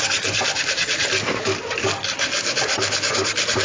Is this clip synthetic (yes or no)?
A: no